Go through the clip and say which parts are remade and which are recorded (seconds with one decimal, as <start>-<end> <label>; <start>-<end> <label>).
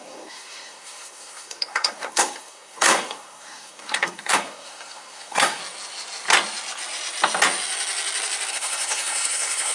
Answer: 0.0-5.6 remade; 5.6-8.5 recorded; 8.5-9.7 remade